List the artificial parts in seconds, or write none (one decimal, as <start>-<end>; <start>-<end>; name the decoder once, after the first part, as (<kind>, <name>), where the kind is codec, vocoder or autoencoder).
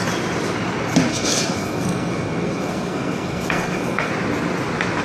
1.1-4.1 (codec, SNAC)